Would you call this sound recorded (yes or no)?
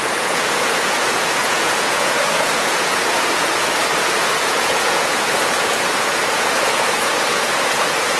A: no